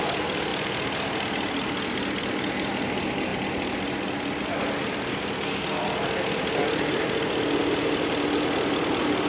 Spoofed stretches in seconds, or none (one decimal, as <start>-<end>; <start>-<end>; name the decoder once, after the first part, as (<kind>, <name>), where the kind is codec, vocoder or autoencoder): none